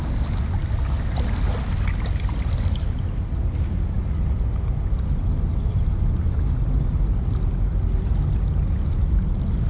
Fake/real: real